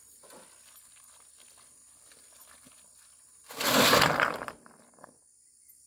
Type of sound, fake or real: real